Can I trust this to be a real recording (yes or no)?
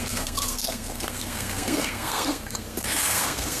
no